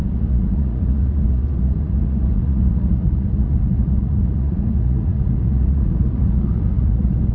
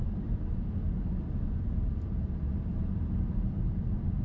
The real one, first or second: second